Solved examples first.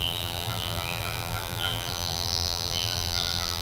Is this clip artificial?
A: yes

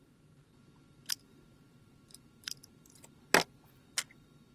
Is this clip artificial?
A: yes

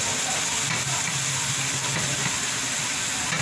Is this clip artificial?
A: no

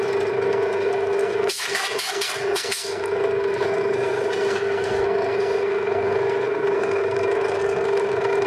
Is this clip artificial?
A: yes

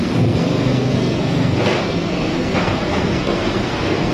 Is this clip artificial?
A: yes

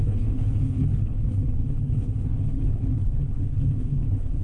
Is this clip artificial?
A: yes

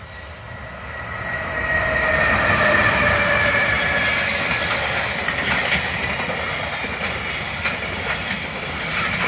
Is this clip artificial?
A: no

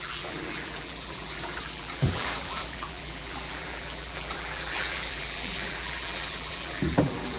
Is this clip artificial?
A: yes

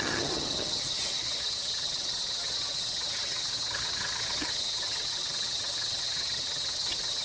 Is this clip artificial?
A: yes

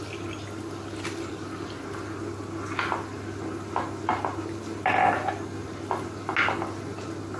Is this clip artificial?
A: no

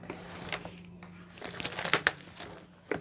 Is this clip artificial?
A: no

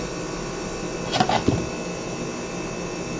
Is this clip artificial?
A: no